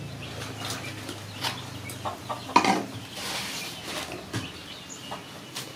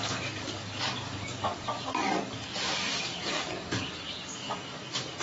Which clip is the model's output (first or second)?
second